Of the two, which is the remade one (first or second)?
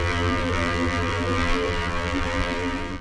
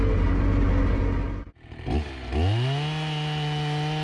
first